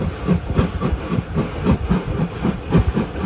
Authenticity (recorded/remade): recorded